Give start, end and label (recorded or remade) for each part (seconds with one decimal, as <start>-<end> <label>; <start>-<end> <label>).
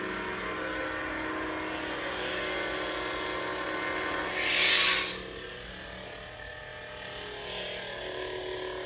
0.0-8.9 recorded